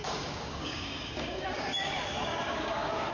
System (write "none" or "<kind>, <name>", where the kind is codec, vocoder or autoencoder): codec, DAC